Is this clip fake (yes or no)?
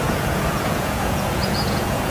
yes